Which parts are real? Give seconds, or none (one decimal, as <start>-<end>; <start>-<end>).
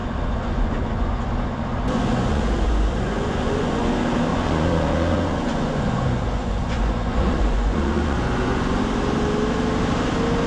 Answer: 3.9-4.3; 8.8-10.5